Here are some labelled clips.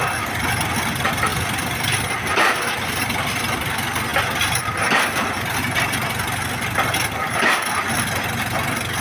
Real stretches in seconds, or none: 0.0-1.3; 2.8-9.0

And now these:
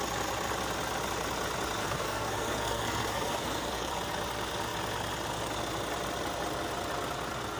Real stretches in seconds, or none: 0.0-1.8; 3.9-7.6

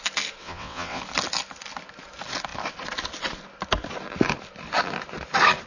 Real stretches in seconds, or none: 0.0-0.4; 1.0-5.7

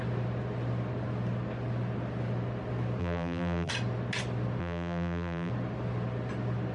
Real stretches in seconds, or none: 0.0-3.0; 3.7-4.6; 5.5-6.7